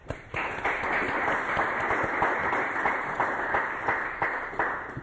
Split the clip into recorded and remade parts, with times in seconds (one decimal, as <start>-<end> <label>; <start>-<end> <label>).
0.0-5.0 recorded